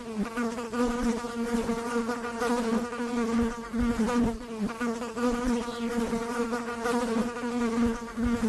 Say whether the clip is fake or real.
fake